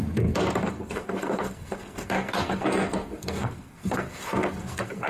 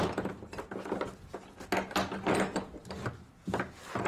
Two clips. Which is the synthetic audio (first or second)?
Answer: first